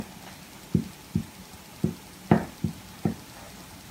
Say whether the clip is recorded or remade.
recorded